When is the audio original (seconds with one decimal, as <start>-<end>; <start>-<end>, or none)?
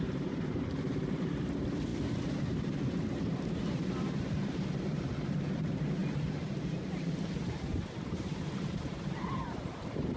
none